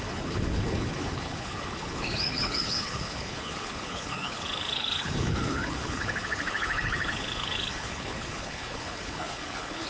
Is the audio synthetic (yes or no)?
yes